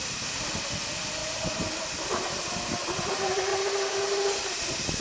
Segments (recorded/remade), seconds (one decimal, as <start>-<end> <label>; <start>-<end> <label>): 0.0-1.2 recorded; 1.2-2.5 remade; 2.5-3.5 recorded; 3.5-4.5 remade; 4.5-5.0 recorded